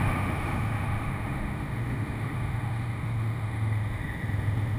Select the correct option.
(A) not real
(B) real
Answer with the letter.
A